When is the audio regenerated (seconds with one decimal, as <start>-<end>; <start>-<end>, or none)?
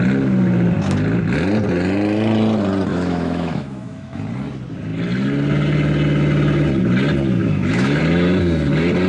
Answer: 2.9-4.2; 7.4-8.0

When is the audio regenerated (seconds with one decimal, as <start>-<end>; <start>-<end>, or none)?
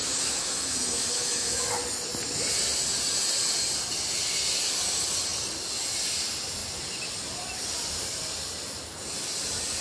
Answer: 0.0-1.7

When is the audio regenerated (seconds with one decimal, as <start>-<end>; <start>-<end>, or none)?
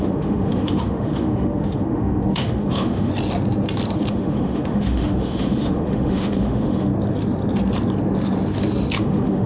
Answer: 0.0-3.1; 4.1-6.9; 9.0-9.5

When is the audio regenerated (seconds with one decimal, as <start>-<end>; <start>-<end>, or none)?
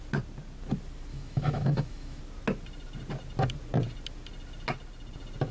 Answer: 1.1-2.2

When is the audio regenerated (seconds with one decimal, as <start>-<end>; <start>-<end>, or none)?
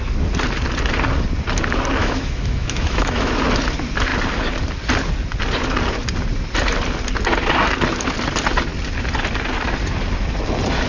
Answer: 2.0-3.3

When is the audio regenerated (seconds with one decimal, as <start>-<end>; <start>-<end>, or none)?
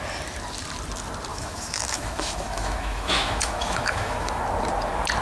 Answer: 1.3-4.4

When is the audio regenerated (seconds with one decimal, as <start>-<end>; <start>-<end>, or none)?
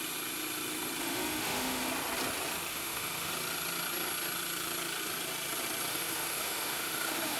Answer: 1.0-1.9; 2.7-3.3; 5.9-7.4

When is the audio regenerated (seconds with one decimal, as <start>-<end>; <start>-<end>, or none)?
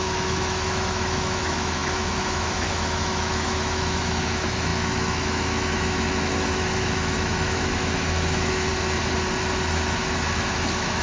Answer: 0.0-8.7; 9.7-11.0